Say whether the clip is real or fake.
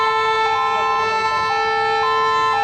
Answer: real